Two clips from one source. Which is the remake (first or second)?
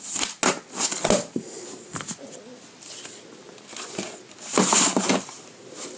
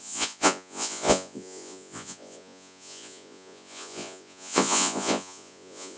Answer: second